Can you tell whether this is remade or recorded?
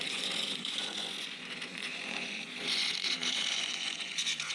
remade